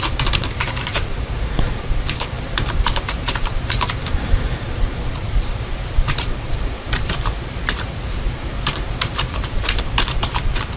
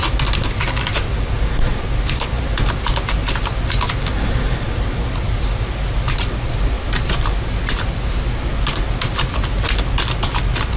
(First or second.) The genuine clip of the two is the second